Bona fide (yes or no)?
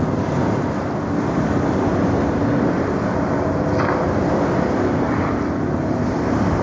no